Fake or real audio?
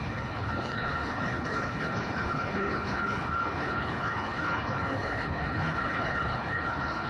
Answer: fake